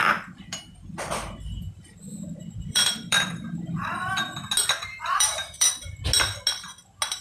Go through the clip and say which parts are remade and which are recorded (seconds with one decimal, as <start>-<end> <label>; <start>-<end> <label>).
0.0-4.1 remade; 4.1-4.9 recorded; 4.9-5.7 remade; 5.7-7.2 recorded

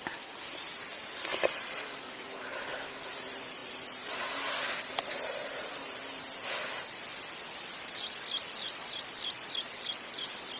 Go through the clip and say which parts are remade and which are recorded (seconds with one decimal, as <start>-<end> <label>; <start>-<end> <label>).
0.0-1.3 recorded; 1.3-2.9 remade; 2.9-10.6 recorded

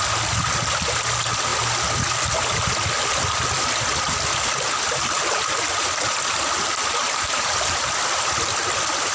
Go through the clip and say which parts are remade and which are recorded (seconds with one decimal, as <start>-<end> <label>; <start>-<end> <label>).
0.0-7.0 recorded; 7.0-7.8 remade; 7.8-9.1 recorded

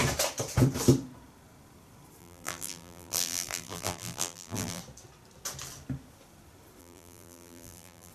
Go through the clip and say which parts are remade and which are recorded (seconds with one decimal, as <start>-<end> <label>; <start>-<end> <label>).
0.0-2.2 recorded; 2.2-4.8 remade; 4.8-6.8 recorded; 6.8-8.1 remade

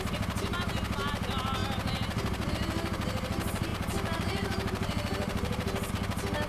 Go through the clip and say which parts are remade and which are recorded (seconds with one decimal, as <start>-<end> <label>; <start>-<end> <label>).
0.0-3.7 recorded; 3.7-5.9 remade; 5.9-6.5 recorded